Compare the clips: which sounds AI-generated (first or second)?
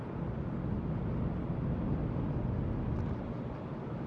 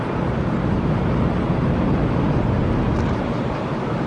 second